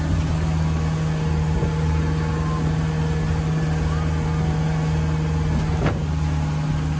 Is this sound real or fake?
real